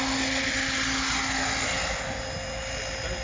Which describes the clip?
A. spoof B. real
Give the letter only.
B